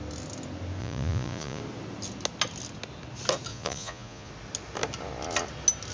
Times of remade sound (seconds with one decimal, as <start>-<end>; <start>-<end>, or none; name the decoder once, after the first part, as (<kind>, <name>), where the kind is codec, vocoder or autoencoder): 0.8-1.6 (vocoder, Vocos); 3.5-4.3